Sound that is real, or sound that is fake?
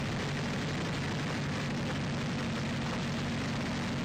real